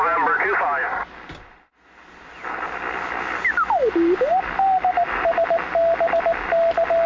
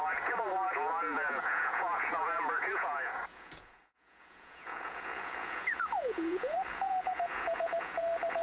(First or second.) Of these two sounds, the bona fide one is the first